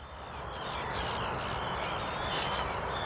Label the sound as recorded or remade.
recorded